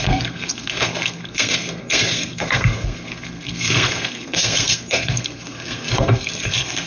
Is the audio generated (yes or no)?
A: yes